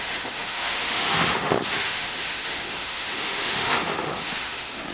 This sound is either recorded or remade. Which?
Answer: remade